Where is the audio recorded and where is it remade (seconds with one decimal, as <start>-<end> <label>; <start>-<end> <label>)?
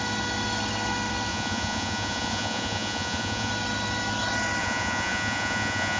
0.0-1.3 recorded; 1.3-3.5 remade; 3.5-4.6 recorded; 4.6-6.0 remade